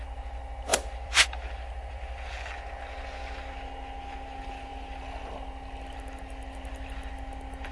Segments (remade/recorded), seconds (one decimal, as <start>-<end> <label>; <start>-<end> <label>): 0.0-0.7 recorded; 0.7-2.3 remade; 2.3-7.7 recorded